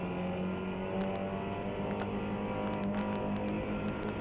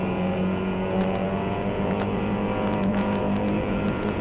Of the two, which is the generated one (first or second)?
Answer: second